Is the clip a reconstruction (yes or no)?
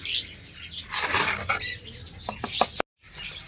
no